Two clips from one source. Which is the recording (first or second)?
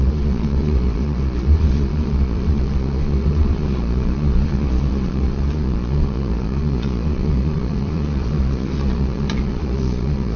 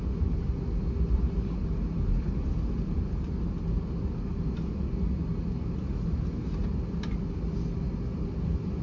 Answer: second